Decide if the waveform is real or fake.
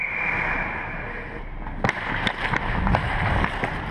real